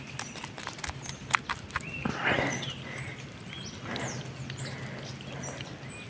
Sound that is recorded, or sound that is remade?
recorded